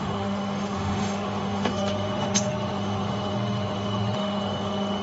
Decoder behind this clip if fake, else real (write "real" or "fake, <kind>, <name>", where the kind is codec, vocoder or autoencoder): fake, autoencoder, DAC-VAE